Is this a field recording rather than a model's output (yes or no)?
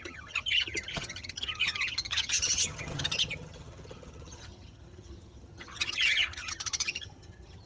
no